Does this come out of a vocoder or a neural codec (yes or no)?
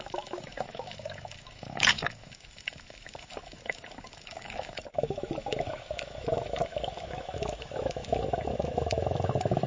yes